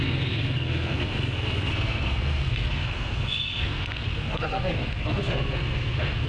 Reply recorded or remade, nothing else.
remade